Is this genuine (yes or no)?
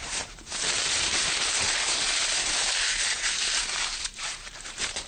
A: no